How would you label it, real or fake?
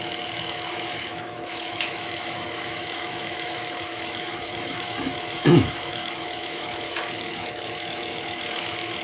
fake